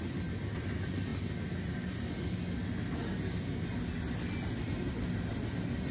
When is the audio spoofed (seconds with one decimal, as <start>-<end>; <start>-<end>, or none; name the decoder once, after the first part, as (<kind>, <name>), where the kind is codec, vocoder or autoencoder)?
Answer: none